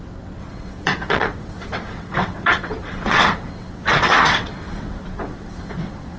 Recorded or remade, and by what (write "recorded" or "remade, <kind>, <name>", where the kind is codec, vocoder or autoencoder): remade, vocoder, WaveNeXt